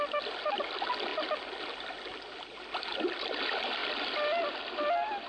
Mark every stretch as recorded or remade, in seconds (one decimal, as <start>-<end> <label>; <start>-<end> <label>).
0.0-5.3 recorded